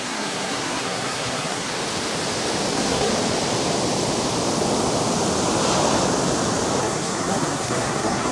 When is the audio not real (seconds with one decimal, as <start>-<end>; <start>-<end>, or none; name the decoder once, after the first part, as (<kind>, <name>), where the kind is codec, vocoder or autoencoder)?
0.0-1.7 (codec, SNAC); 2.7-3.1; 6.8-8.3